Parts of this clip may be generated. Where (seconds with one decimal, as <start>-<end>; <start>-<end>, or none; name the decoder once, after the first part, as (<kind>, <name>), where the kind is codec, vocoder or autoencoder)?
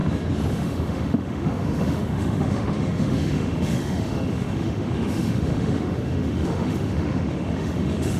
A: 0.5-8.2 (autoencoder, DAC-VAE)